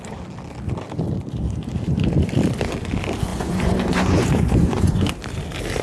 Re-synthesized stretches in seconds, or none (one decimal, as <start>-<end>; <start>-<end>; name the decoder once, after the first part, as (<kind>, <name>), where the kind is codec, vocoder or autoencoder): 3.3-5.1 (vocoder, Vocos)